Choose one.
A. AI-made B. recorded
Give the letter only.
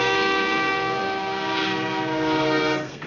A